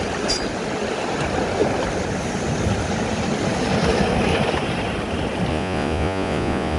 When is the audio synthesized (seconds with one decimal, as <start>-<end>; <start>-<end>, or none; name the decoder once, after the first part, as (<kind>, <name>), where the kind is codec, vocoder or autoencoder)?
5.5-6.8 (vocoder, Vocos)